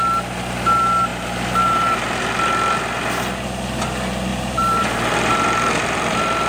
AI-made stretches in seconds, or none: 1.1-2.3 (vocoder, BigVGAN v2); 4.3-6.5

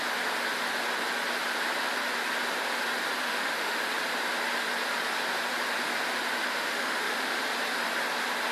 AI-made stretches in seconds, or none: 3.2-3.8 (autoencoder, DAC-VAE); 6.4-7.4

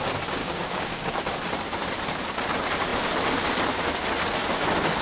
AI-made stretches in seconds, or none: 0.4-1.2 (codec, DAC)

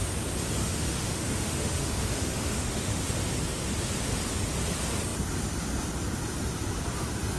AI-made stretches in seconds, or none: 0.6-3.0 (autoencoder, DAC-VAE)